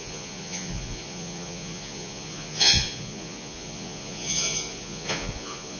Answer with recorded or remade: remade